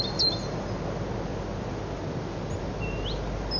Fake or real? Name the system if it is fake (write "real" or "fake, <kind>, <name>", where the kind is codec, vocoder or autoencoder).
real